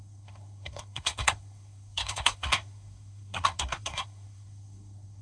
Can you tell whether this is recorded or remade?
remade